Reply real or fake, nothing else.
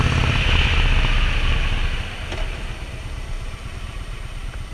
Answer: real